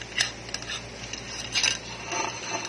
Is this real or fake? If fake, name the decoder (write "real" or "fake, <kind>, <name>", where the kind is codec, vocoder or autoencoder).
real